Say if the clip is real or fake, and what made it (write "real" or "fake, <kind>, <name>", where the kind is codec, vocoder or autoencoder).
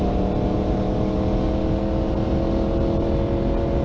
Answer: real